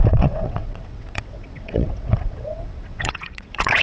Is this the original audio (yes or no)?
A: no